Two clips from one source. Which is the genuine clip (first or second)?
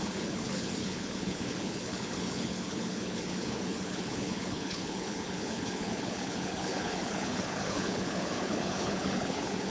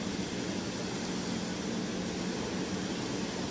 second